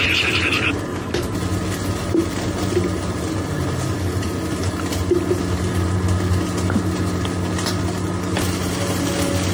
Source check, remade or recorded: recorded